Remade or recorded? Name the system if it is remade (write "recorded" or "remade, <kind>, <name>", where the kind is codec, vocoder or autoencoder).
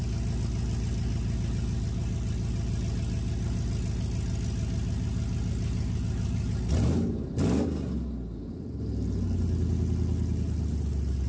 recorded